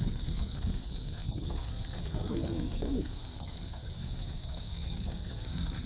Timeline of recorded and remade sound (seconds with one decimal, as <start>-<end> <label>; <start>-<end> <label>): 0.0-5.9 remade